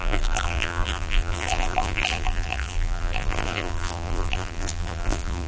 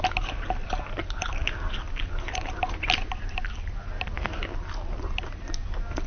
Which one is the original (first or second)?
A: second